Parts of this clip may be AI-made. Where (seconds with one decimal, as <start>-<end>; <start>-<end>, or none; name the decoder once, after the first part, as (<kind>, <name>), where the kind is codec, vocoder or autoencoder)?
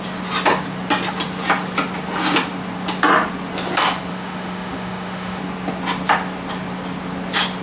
4.1-5.4 (autoencoder, DAC-VAE)